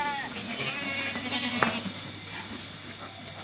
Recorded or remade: recorded